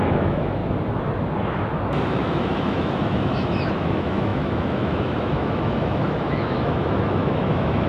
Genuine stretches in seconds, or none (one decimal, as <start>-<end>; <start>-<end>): 0.6-2.1